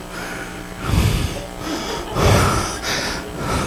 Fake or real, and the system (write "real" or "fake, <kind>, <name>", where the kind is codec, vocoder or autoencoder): real